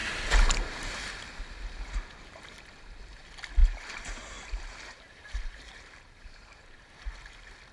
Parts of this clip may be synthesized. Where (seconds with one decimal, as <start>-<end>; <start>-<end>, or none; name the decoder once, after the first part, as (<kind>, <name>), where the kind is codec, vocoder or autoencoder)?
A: 0.0-2.6 (vocoder, BigVGAN v2); 3.6-7.1